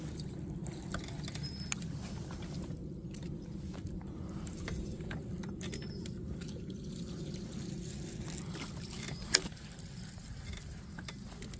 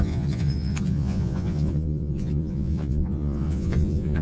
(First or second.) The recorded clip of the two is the first